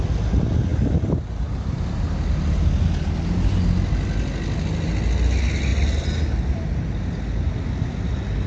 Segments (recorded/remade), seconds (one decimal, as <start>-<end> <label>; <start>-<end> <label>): 0.0-8.5 recorded